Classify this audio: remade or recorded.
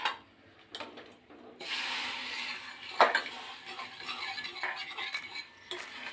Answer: recorded